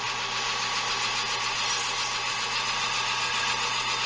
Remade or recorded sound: recorded